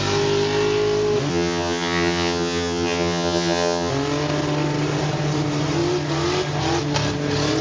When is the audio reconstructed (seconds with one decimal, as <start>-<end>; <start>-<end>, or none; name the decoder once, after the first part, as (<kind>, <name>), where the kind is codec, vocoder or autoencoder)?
1.3-3.9 (vocoder, HiFi-GAN)